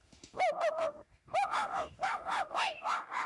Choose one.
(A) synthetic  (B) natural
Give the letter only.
A